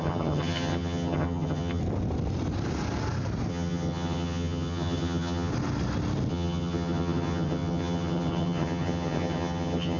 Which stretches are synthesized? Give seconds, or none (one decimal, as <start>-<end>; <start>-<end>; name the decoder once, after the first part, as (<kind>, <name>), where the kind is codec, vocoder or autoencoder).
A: 0.0-1.8 (vocoder, HiFi-GAN); 3.5-5.5; 6.3-10.0